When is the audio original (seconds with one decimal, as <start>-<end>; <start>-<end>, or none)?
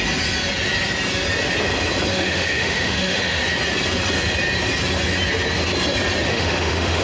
0.0-2.1; 3.4-6.3